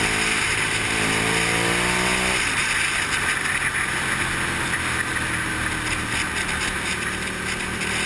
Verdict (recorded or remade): recorded